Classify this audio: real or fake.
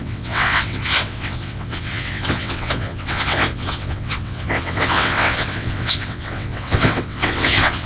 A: fake